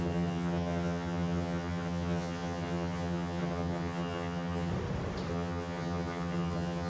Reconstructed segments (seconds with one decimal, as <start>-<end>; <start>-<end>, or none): 0.0-4.7; 5.3-6.9